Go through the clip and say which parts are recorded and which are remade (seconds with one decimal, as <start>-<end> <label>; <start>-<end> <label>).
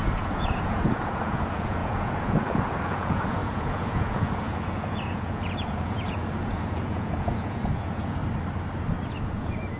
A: 0.0-8.2 remade; 8.2-9.1 recorded; 9.1-9.8 remade